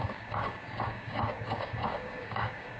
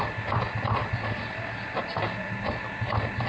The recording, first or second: second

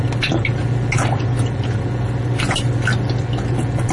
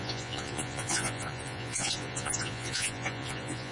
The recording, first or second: first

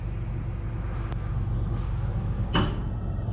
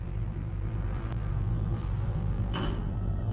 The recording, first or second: first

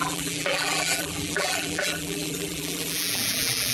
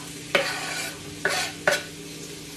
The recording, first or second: second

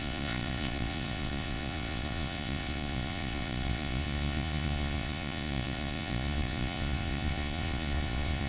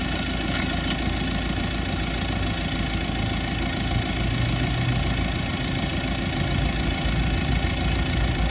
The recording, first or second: second